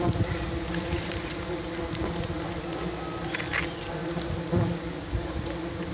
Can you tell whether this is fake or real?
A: real